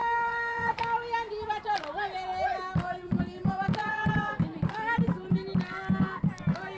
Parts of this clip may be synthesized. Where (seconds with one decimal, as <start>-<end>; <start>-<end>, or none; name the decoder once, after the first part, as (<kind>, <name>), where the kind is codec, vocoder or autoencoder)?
0.0-0.8 (vocoder, Vocos); 3.8-4.4